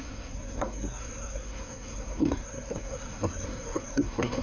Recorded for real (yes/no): no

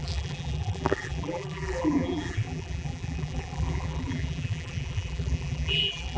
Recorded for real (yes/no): no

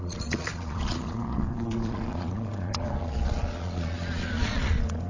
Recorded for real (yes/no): no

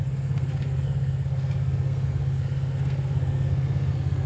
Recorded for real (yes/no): no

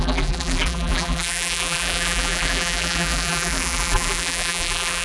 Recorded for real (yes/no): no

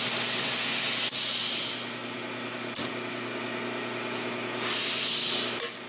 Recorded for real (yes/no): yes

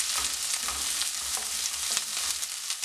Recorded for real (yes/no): yes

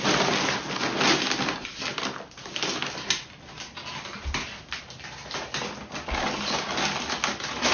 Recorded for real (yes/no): yes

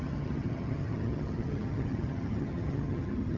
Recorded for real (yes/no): no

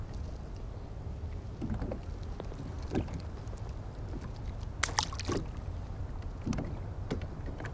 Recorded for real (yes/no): yes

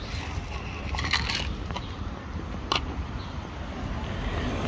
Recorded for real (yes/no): yes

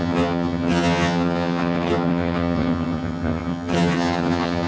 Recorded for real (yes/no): no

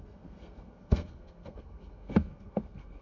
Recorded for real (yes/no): no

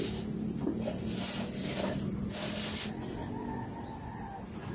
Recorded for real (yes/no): yes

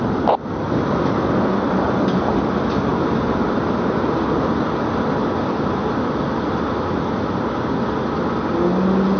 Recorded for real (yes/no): yes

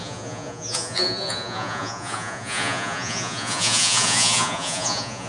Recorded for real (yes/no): no